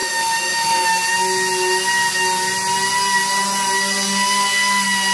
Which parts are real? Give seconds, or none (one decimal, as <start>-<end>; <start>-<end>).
0.9-5.1